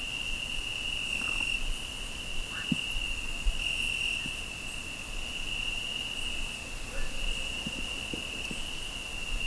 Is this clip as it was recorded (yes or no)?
yes